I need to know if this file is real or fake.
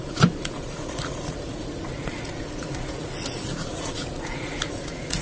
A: fake